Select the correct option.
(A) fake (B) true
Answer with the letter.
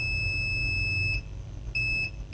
B